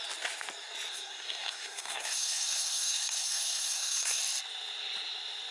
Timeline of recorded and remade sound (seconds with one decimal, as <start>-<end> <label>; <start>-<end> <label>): 0.0-0.9 recorded; 0.9-4.2 remade; 4.2-5.5 recorded